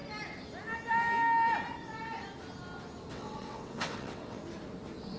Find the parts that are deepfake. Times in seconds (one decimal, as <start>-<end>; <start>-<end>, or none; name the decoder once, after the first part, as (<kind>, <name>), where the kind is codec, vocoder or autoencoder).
3.1-4.4 (vocoder, WaveNeXt)